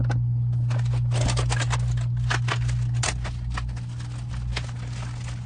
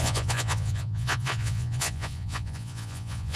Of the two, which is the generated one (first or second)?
second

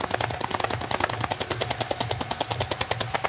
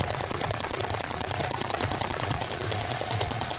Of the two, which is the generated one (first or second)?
second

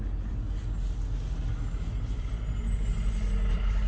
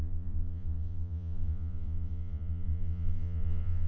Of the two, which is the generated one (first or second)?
second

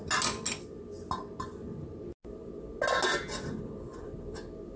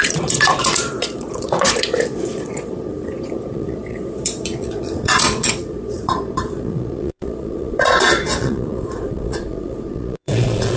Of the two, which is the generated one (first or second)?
second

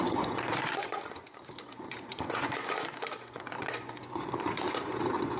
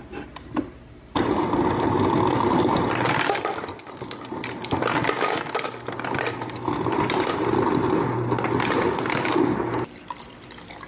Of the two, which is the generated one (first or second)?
first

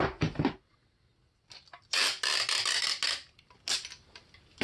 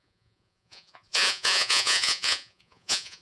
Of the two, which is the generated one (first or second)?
second